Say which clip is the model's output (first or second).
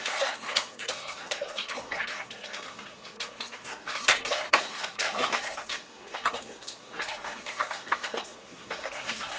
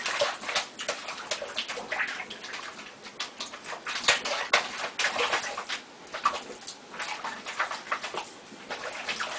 first